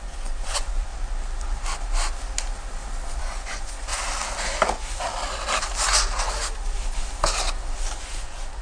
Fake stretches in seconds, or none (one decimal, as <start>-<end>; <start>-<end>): 0.0-0.9; 3.2-3.9; 8.0-8.6